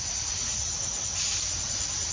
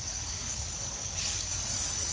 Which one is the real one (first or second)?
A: first